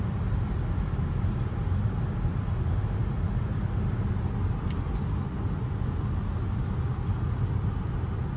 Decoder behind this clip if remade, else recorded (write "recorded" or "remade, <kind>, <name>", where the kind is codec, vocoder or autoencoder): recorded